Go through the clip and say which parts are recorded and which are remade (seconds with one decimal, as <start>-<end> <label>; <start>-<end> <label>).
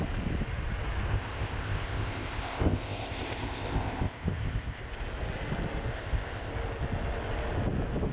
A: 0.0-1.1 recorded; 1.1-4.8 remade; 4.8-5.9 recorded; 5.9-6.5 remade; 6.5-8.1 recorded